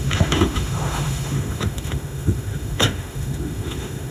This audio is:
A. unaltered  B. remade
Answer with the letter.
B